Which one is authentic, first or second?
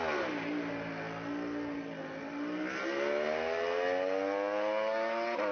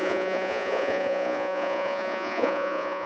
first